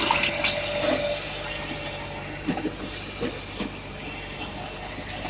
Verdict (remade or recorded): recorded